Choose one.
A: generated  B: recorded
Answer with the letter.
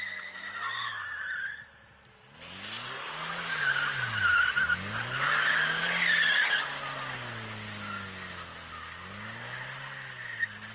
B